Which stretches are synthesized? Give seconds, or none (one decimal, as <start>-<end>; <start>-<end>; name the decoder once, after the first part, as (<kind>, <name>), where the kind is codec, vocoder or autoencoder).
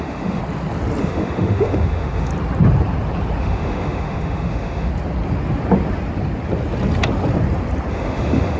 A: 0.0-0.4 (autoencoder, DAC-VAE); 1.0-2.3; 3.4-4.9; 7.9-8.6